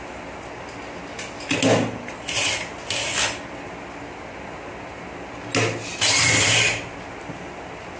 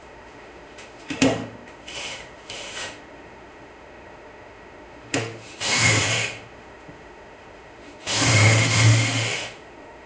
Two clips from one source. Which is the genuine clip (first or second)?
first